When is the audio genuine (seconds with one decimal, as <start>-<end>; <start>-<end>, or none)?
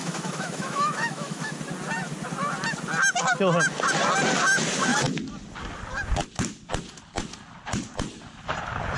1.6-9.0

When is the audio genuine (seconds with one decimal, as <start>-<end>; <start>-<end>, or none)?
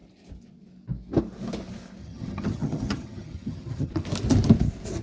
0.0-2.0; 3.9-5.0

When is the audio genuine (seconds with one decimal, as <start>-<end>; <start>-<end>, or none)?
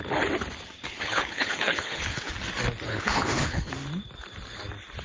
0.0-0.9; 2.3-2.9; 3.7-5.0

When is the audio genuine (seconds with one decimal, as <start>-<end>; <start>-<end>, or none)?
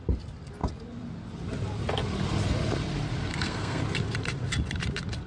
0.0-3.3; 3.8-5.3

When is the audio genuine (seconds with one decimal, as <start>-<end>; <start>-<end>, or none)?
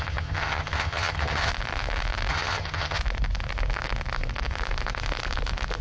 1.5-2.3; 3.0-5.8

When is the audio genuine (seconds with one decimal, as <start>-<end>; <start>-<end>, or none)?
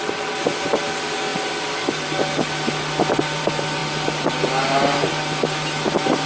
0.0-6.3